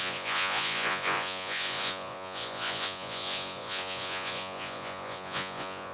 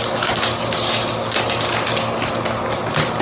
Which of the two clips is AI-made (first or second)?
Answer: first